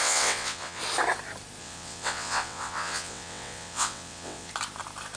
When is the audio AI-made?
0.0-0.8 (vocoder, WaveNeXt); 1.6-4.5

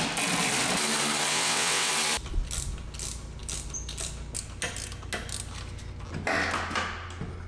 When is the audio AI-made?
1.3-1.9 (vocoder, WaveNeXt)

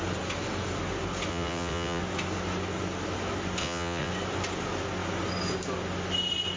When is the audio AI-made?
1.3-2.0 (vocoder, WaveNeXt); 3.6-4.1

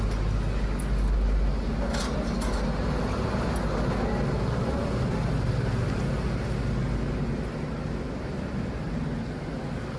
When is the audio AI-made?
none